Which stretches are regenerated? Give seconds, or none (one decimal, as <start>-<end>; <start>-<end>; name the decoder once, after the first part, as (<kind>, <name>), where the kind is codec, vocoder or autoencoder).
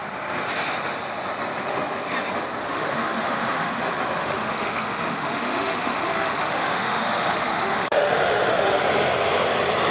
2.6-3.8 (autoencoder, DAC-VAE); 4.2-8.8